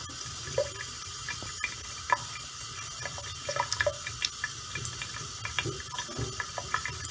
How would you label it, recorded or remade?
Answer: recorded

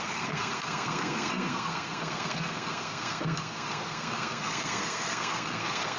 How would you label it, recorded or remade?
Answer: remade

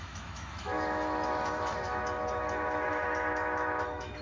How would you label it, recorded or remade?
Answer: remade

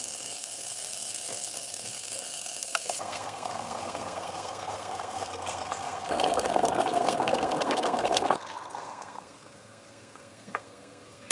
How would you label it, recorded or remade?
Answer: remade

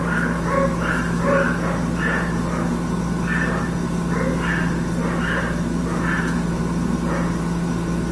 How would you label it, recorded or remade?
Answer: recorded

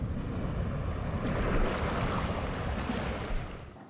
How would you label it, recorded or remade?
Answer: recorded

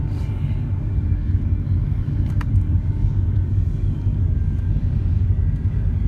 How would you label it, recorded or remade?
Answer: remade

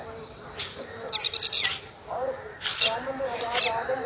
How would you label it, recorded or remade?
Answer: recorded